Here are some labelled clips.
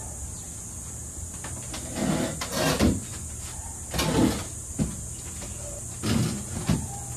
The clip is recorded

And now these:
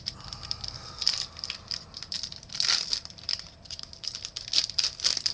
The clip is remade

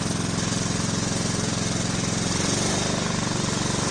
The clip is recorded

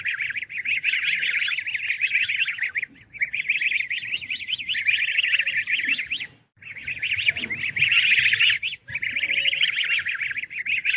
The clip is recorded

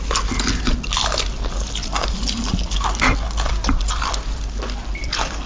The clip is recorded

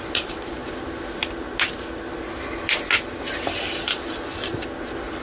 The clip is recorded